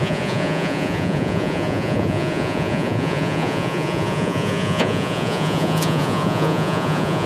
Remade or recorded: remade